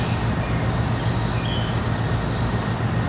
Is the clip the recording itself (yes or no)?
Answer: yes